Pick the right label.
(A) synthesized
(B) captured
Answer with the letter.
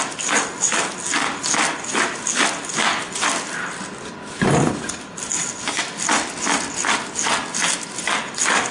B